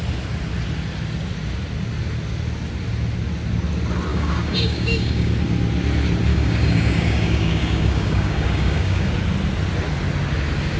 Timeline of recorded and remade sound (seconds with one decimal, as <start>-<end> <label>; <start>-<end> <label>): 0.0-4.1 recorded; 4.1-5.3 remade; 5.3-6.3 recorded; 6.3-9.1 remade; 9.1-10.8 recorded